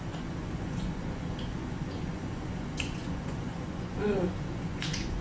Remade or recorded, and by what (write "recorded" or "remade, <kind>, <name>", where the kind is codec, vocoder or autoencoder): remade, vocoder, Vocos